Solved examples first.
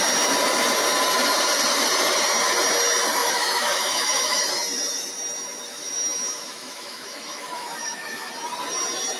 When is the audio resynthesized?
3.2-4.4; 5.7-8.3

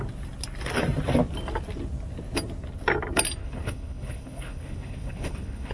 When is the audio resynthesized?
3.4-5.7

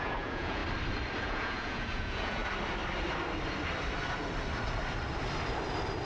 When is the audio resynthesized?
0.0-0.6; 1.2-2.4

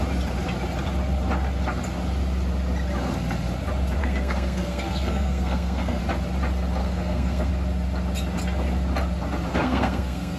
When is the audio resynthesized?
4.0-6.0; 6.8-7.5; 9.5-10.4